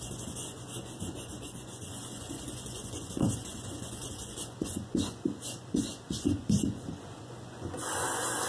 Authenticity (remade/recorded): remade